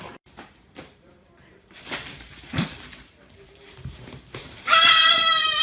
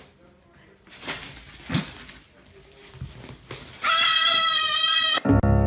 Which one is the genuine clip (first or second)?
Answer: second